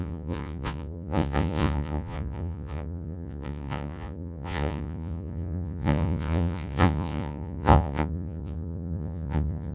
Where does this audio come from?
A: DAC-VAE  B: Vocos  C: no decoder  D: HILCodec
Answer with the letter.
B